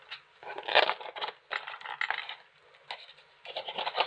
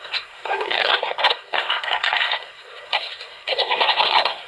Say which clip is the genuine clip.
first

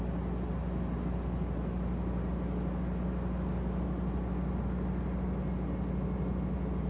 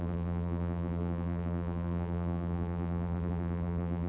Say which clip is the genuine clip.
first